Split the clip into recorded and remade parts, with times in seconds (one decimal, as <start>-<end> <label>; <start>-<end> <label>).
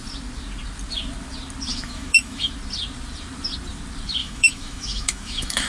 0.0-1.7 recorded; 1.7-2.5 remade; 2.5-4.2 recorded; 4.2-5.7 remade